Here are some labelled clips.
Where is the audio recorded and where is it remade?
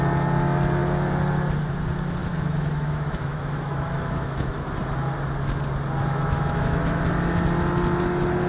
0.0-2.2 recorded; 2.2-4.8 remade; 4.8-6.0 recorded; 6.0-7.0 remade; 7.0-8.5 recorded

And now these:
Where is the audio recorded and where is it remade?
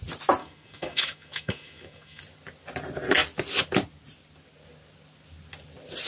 0.0-0.4 recorded; 0.4-2.2 remade; 2.2-6.1 recorded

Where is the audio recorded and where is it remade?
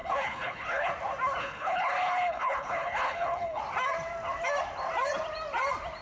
0.0-0.9 remade; 0.9-1.4 recorded; 1.4-3.6 remade; 3.6-6.0 recorded